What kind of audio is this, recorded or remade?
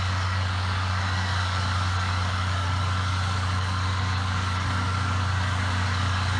remade